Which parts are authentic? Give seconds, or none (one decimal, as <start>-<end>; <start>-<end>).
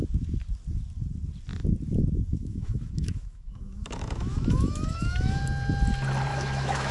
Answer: 0.0-2.3; 5.4-6.3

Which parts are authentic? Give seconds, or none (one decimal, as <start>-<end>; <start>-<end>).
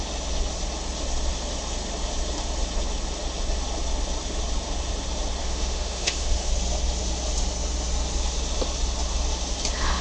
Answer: 0.0-5.4; 6.5-10.0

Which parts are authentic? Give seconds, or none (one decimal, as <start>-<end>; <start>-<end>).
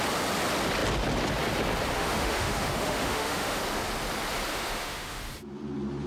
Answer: 0.0-1.9; 3.6-4.5; 5.2-6.1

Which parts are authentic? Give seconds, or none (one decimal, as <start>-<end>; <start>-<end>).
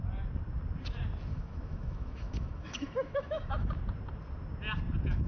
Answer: 0.0-1.3; 3.7-5.3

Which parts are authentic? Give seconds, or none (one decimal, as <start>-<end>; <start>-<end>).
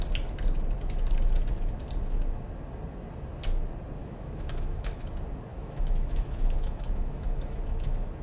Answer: 0.0-4.0; 5.1-5.5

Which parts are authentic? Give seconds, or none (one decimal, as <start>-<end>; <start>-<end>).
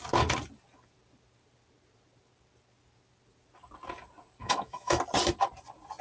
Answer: 0.0-4.4; 5.0-6.0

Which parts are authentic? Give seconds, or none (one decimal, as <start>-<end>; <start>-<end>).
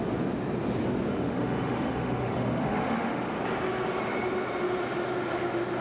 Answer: 0.0-1.1; 3.3-5.8